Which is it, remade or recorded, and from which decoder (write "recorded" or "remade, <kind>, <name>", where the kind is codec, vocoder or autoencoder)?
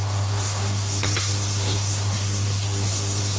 remade, codec, SNAC